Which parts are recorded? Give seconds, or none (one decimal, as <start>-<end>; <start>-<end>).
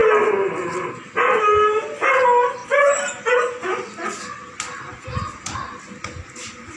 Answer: 0.0-6.8